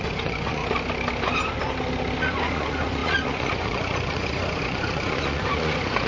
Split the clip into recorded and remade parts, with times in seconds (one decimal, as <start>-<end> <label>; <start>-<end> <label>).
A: 0.0-0.6 remade; 0.6-2.2 recorded; 2.2-6.1 remade